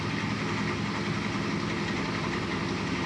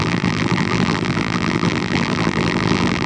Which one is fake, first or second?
second